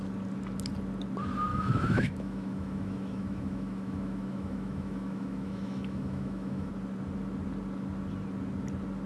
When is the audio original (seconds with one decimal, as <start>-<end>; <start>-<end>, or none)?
0.0-1.5; 6.7-9.1